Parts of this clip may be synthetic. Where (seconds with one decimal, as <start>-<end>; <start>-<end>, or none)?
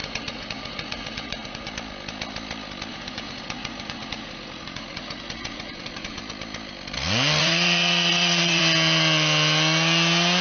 0.0-1.7; 2.9-6.2; 7.4-8.6